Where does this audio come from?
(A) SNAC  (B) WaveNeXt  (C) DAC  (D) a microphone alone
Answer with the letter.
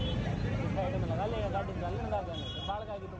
D